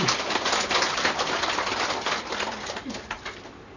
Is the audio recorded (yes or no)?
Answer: yes